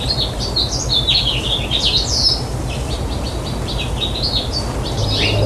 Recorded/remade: recorded